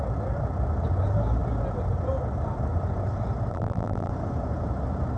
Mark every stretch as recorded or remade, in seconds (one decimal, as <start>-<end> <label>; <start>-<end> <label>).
0.0-3.5 recorded; 3.5-4.1 remade; 4.1-5.2 recorded